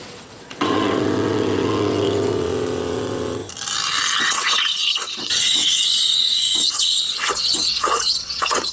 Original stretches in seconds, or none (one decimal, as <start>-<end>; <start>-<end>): 3.4-4.2